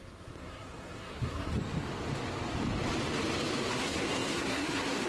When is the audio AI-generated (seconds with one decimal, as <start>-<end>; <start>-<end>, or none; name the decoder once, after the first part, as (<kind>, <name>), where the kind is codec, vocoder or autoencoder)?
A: 0.0-1.5 (codec, SNAC); 3.7-5.1